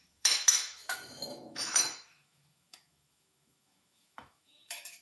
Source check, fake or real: fake